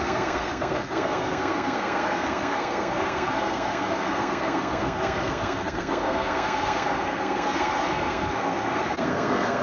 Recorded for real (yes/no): no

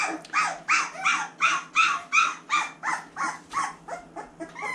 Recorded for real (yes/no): yes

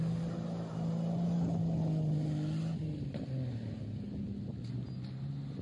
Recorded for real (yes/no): yes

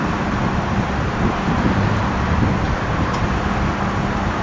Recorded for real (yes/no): yes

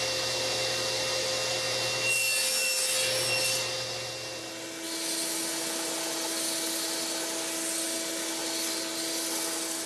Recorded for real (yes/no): yes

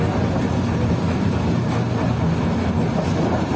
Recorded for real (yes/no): yes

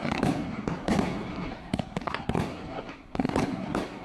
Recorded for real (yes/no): no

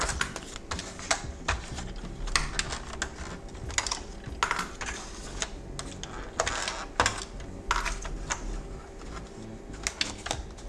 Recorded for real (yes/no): yes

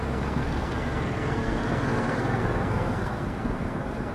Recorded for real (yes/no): no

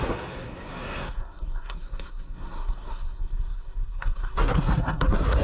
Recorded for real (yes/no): no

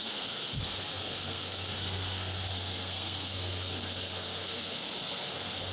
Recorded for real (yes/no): no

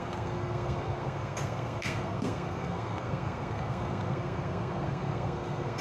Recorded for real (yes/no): no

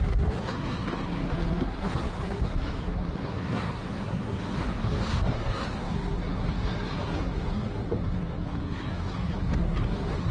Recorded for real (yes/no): no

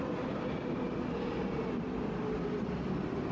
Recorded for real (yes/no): yes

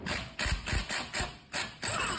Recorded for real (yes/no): yes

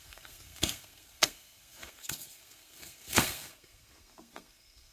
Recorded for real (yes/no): no